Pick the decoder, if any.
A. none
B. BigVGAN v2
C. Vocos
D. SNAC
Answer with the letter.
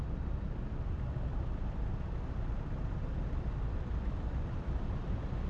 A